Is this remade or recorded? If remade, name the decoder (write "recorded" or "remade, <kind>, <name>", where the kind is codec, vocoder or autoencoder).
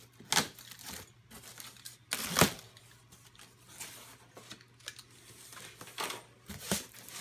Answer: recorded